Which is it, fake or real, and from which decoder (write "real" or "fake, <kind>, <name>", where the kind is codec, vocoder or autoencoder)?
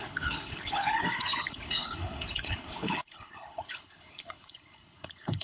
fake, codec, HILCodec